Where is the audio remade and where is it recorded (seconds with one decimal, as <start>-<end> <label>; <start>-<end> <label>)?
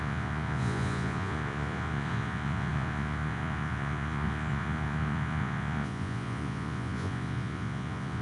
0.0-8.2 remade